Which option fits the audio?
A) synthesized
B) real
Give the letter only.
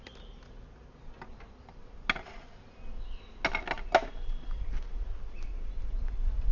B